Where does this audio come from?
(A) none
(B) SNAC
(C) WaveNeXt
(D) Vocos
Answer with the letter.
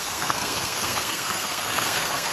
B